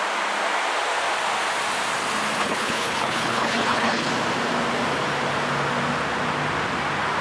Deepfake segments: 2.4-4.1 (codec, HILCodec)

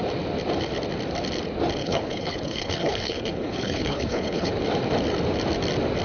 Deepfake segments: 1.8-4.5 (codec, HILCodec)